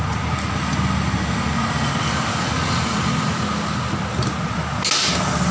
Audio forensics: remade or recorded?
recorded